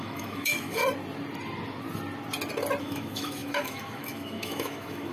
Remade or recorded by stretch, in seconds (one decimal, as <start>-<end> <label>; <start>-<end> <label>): 0.0-0.8 remade; 0.8-2.8 recorded; 2.8-5.1 remade